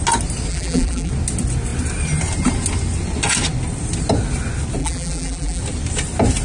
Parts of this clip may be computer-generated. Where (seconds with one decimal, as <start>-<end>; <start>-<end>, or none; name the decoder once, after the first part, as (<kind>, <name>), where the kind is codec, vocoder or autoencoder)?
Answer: 0.5-1.1 (vocoder, BigVGAN v2); 4.8-5.6